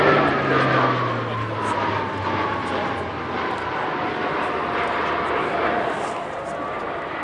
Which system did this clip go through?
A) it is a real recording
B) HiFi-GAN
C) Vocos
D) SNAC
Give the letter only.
A